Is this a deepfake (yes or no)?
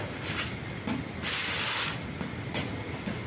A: no